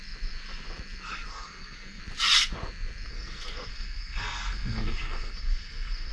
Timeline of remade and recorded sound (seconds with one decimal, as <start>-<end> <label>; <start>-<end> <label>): 0.0-1.3 recorded; 1.3-2.0 remade; 2.0-3.1 recorded; 3.1-6.1 remade